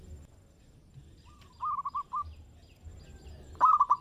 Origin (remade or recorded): recorded